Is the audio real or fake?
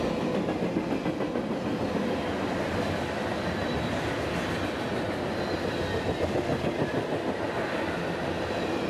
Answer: real